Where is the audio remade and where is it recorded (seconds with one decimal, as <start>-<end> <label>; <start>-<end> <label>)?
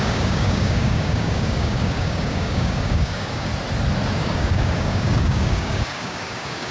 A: 0.0-3.5 remade; 3.5-4.1 recorded; 4.1-6.7 remade